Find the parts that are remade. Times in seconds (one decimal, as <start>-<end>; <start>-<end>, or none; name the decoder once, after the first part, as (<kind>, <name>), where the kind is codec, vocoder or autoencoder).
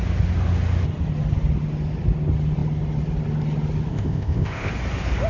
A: 3.9-4.7 (codec, ZipCodec)